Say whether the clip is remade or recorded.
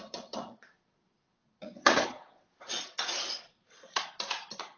remade